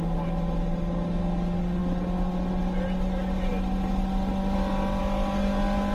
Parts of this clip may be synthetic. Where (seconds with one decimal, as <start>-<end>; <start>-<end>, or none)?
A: none